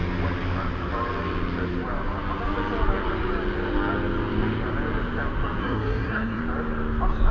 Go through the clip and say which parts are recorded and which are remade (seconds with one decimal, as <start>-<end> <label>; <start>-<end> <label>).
0.0-5.6 recorded; 5.6-6.4 remade; 6.4-7.3 recorded